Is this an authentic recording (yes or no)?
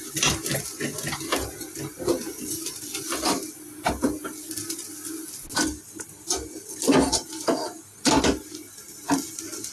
yes